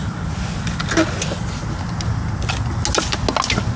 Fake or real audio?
real